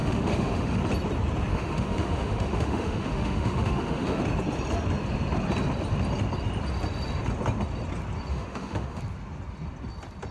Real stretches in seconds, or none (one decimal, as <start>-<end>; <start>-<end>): 0.8-1.5; 4.2-8.3; 9.0-10.3